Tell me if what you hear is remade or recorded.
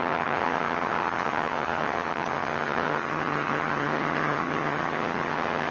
remade